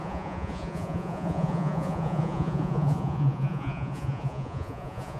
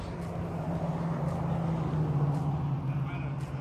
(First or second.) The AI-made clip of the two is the first